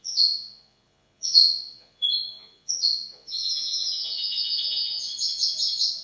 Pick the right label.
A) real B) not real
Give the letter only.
B